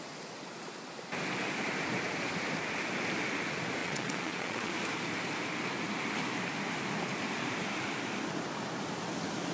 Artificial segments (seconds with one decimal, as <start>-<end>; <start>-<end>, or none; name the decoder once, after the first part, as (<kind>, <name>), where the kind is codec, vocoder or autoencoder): 3.8-4.7 (vocoder, Vocos)